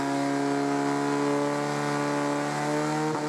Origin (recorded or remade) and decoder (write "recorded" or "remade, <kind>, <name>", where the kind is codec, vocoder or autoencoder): recorded